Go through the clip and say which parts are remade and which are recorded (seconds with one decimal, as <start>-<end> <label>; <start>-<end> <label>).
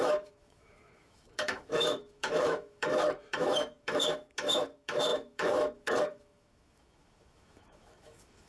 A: 0.0-8.5 remade